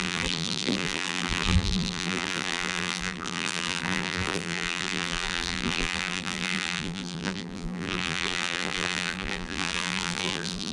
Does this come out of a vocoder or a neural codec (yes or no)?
yes